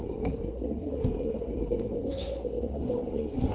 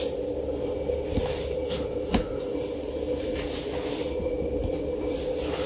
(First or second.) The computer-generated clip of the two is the first